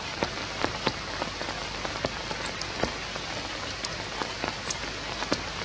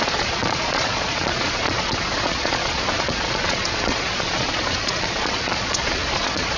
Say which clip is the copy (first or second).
second